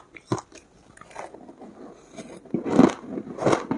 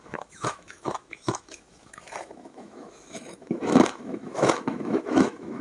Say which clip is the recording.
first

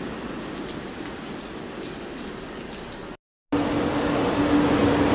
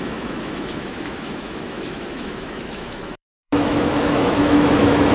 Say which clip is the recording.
first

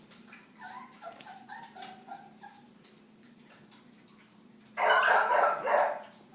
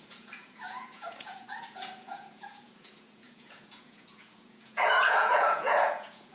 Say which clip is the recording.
first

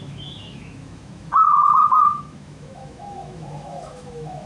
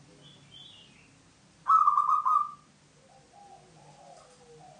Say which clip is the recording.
second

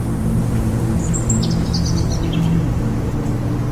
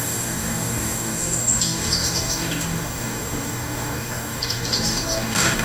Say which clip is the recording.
first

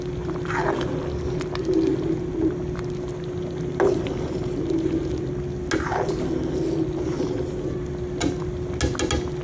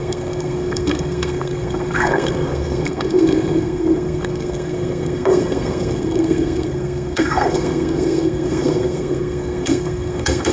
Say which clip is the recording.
first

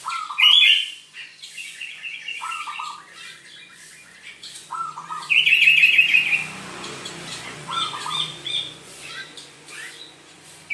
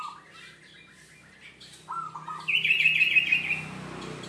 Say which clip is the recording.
second